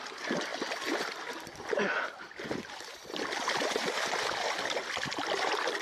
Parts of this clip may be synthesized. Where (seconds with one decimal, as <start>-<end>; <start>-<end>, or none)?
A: none